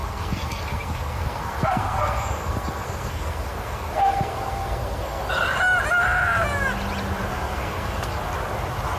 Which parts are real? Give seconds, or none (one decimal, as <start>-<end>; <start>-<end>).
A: 5.2-7.3; 8.2-9.0